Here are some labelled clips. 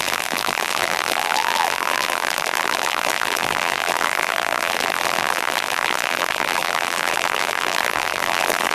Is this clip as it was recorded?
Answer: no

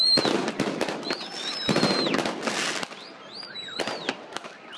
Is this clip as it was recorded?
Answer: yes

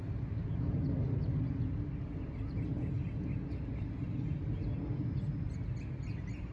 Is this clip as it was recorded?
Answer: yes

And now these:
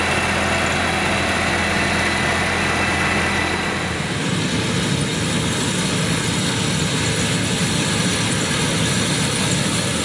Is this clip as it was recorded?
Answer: yes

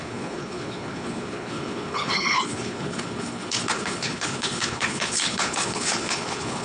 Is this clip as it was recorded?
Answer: no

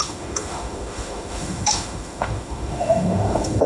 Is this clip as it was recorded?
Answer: no